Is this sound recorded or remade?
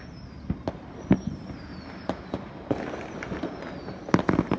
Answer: recorded